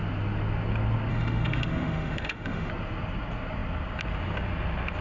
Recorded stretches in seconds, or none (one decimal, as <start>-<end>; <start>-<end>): 0.0-1.1; 2.7-5.0